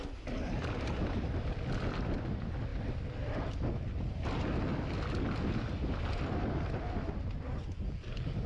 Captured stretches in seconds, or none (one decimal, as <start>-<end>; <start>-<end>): 0.0-8.5